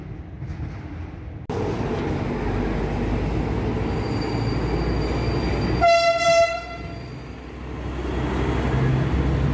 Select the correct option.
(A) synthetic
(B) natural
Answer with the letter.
B